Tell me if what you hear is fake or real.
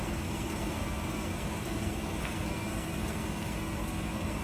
fake